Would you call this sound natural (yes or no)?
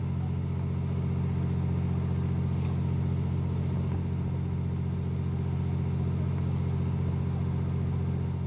yes